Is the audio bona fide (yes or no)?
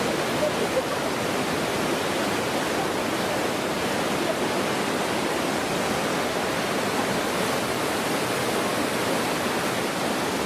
yes